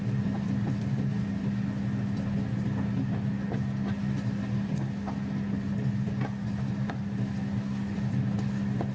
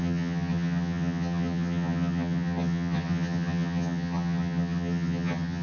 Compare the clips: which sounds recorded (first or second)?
first